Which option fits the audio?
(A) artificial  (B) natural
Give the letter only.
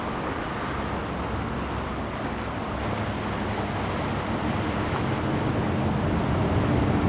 B